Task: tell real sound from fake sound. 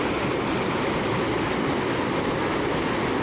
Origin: real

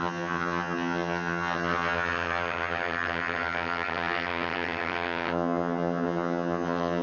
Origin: fake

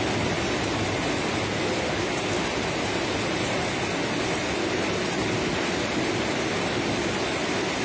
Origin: real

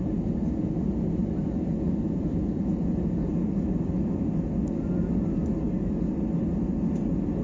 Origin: real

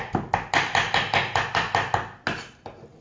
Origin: real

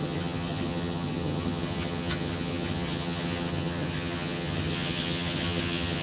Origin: fake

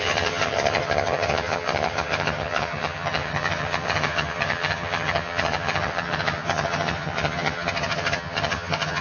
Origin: fake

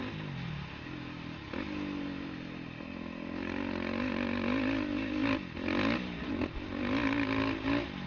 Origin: real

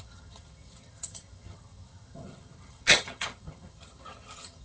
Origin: fake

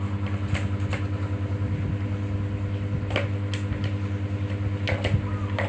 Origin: real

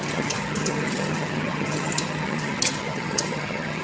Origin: fake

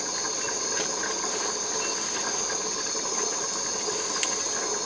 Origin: real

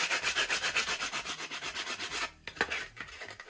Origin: real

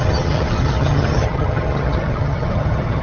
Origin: fake